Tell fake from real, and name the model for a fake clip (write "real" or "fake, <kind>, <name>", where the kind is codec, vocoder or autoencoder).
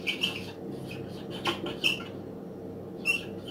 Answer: real